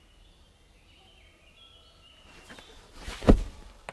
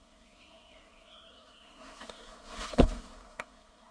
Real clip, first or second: first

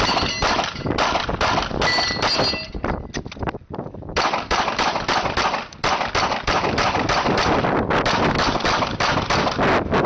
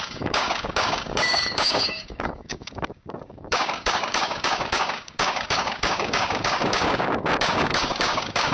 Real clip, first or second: first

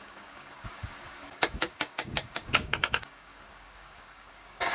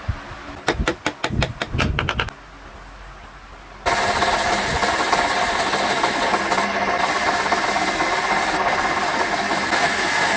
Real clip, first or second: second